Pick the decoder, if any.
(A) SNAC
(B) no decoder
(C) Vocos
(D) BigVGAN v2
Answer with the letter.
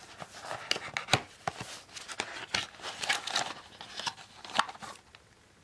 B